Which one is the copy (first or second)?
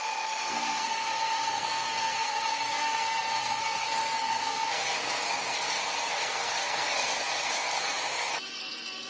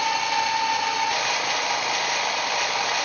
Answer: first